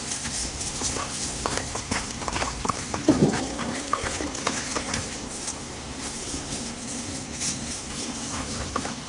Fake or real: fake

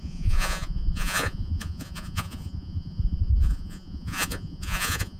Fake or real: fake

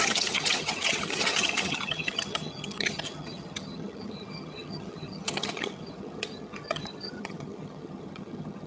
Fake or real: fake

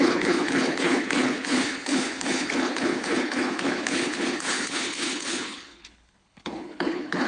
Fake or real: fake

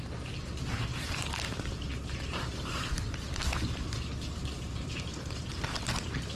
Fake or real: fake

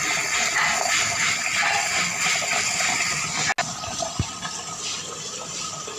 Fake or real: real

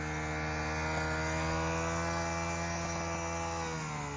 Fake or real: real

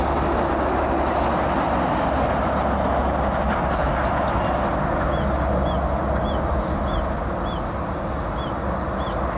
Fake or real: real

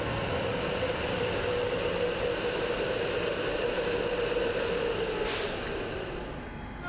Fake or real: real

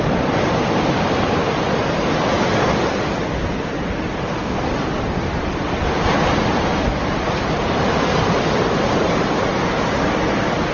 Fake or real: real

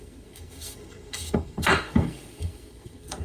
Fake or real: fake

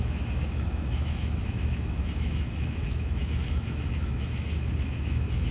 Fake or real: fake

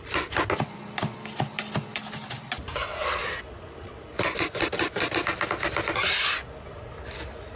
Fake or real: real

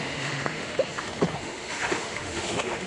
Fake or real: fake